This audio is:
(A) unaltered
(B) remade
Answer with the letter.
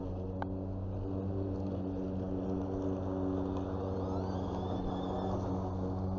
A